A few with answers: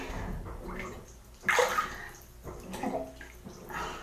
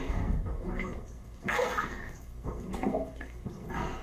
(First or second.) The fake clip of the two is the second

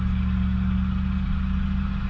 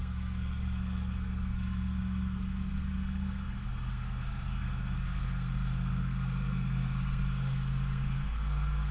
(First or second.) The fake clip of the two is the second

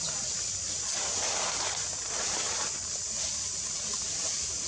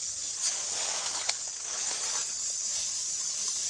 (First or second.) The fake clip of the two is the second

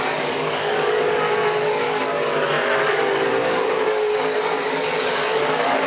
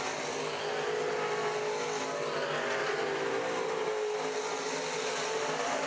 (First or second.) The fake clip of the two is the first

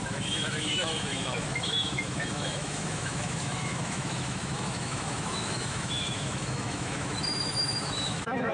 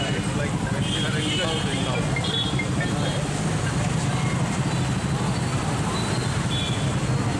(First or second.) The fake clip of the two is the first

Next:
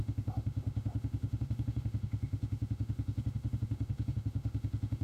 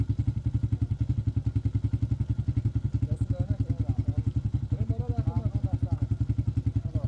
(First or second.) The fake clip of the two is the first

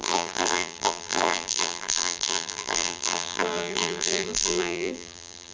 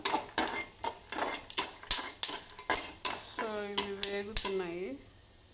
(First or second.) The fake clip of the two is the first